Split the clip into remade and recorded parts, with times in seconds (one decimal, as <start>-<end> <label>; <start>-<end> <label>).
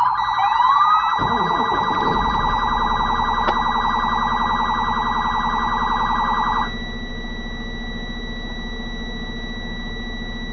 0.0-10.5 recorded